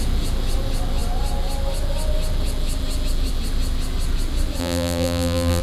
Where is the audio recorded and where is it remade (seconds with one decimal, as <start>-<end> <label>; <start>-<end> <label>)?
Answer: 0.0-4.6 recorded; 4.6-5.6 remade